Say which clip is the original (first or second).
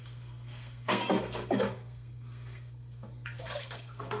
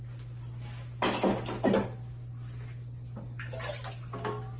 second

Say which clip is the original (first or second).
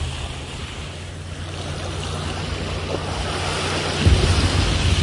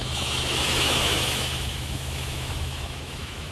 first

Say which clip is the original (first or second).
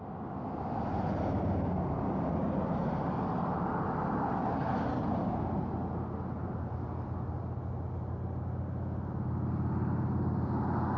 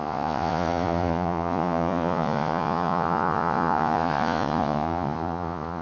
first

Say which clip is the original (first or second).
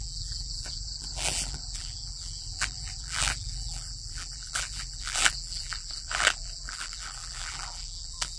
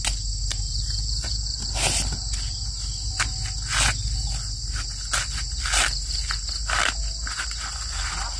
second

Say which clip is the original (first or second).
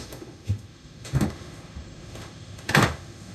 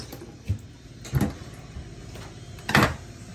second